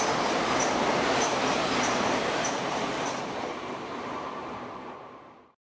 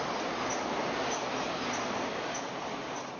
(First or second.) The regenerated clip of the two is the first